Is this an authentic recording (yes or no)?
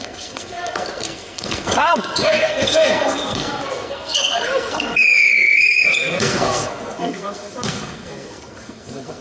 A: no